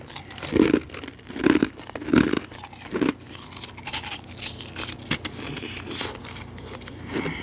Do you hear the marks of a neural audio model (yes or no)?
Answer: no